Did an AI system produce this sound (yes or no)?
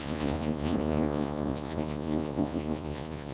yes